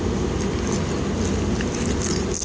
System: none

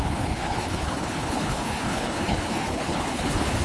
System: codec, HILCodec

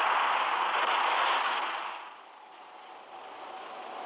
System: none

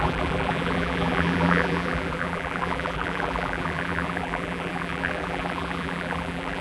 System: vocoder, BigVGAN v2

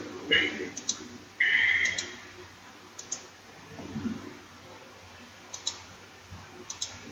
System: none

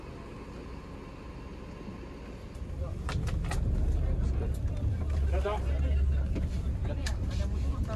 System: none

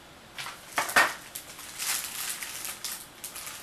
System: none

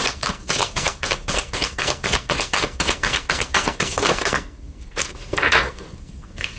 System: codec, SNAC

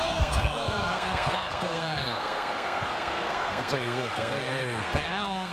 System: codec, SNAC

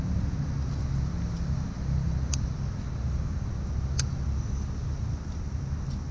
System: none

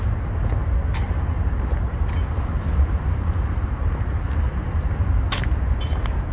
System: none